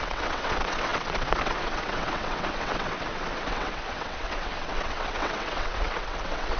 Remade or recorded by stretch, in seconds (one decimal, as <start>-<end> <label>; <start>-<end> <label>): 0.0-6.6 remade